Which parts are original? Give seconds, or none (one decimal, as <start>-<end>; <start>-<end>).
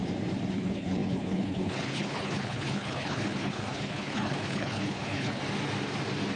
0.0-0.5; 5.4-6.4